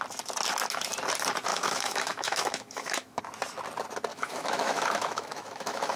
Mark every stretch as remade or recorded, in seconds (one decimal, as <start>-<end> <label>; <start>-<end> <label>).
0.0-1.5 recorded; 1.5-3.2 remade; 3.2-4.1 recorded; 4.1-6.0 remade